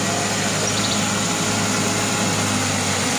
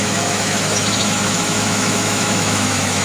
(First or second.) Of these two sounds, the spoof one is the second